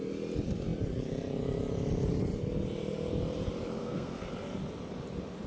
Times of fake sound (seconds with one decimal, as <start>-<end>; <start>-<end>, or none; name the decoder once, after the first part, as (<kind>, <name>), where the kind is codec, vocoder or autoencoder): 3.8-4.3 (codec, SNAC)